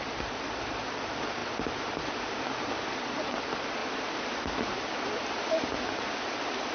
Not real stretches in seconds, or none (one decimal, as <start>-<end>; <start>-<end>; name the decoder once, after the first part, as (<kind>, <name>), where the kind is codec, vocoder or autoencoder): 0.0-1.4 (vocoder, BigVGAN v2); 2.4-3.8